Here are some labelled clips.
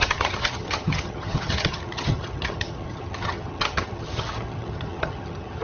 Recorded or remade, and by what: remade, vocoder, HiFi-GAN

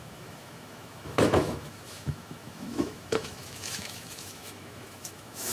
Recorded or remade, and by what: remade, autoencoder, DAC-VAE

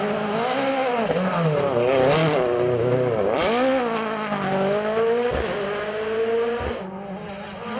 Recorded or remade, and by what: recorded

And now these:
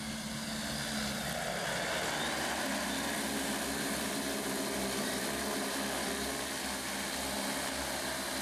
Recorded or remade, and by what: recorded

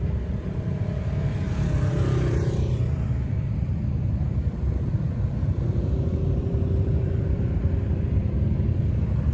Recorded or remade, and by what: remade, vocoder, BigVGAN v2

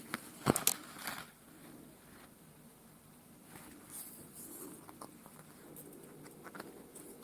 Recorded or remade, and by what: recorded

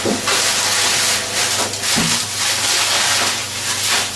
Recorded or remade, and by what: recorded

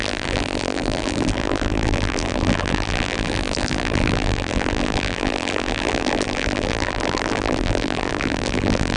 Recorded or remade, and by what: remade, vocoder, BigVGAN v2